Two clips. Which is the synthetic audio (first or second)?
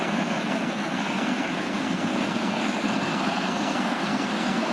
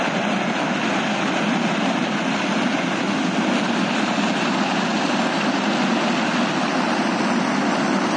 first